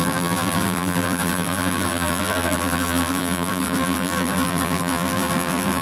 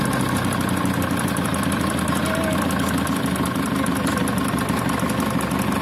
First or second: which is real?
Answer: second